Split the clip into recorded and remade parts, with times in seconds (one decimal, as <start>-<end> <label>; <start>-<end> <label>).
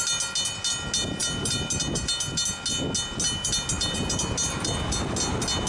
0.0-5.7 recorded